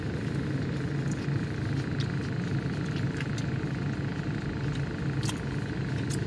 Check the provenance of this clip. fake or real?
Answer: real